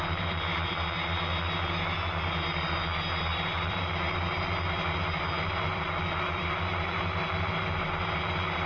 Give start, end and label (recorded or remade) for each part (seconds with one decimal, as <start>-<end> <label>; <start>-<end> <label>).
0.0-1.3 remade; 1.3-2.6 recorded; 2.6-8.7 remade